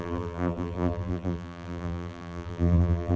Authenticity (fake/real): fake